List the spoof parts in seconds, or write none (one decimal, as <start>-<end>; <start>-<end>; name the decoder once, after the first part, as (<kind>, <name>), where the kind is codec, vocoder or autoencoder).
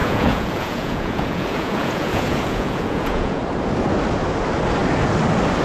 0.0-3.4 (vocoder, Vocos)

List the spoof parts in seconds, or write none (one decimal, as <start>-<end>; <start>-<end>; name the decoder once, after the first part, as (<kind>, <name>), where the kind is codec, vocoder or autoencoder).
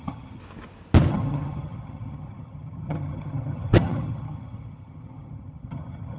0.0-0.4 (vocoder, HiFi-GAN); 1.1-6.2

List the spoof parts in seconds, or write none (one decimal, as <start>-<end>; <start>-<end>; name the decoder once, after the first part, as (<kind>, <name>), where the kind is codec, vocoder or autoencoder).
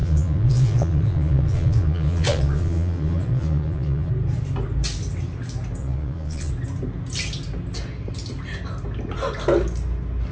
0.0-4.1 (vocoder, Vocos); 5.8-6.5